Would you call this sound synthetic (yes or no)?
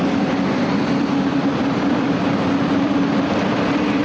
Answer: yes